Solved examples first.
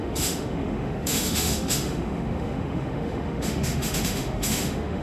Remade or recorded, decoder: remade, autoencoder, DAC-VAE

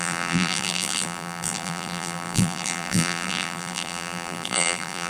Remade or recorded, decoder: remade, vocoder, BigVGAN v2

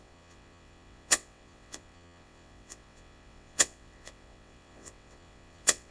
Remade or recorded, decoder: remade, vocoder, WaveNeXt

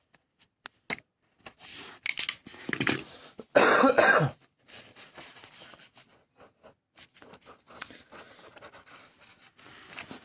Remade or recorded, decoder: recorded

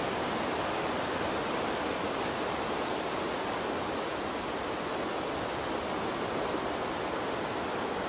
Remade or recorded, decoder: recorded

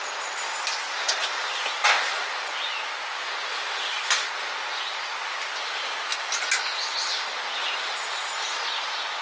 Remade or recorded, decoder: recorded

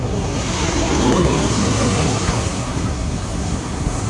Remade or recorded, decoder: remade, codec, SNAC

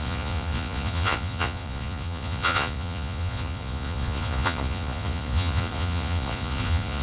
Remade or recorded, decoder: remade, vocoder, Vocos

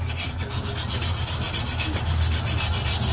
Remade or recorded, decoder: recorded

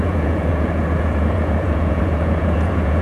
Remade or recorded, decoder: remade, vocoder, Vocos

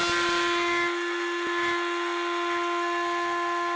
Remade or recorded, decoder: recorded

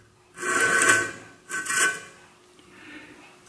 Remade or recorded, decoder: recorded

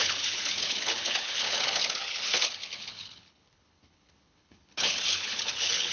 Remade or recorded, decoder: remade, codec, HILCodec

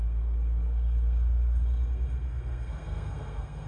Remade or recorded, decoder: remade, codec, SNAC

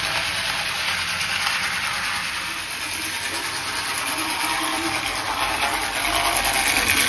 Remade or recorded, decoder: recorded